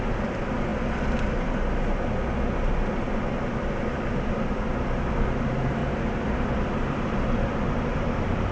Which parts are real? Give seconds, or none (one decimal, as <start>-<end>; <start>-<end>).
0.7-5.0